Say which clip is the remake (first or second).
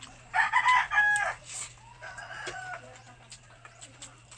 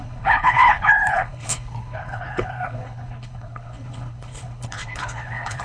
second